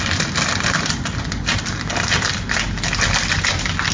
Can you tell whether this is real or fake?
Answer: real